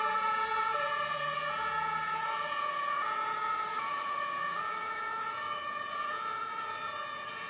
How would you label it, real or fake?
fake